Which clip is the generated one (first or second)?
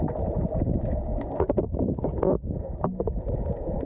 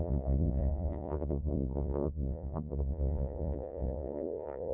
second